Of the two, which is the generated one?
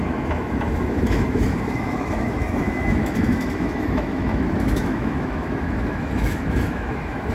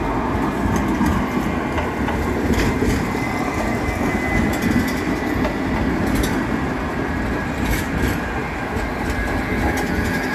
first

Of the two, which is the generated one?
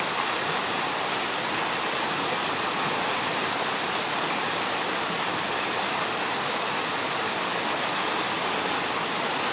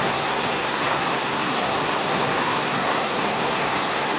second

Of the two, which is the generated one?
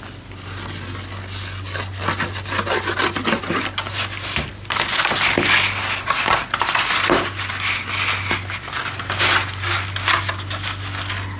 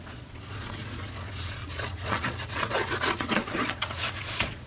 second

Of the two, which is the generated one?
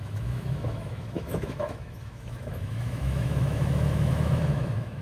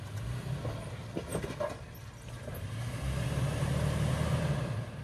first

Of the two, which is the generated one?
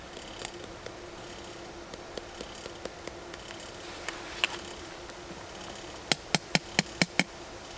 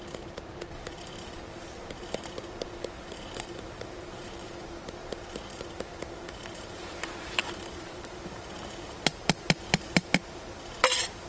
second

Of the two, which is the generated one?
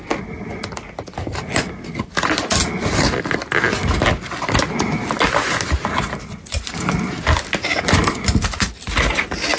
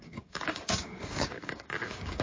second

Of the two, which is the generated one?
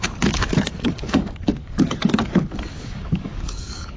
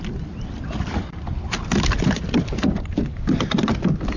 first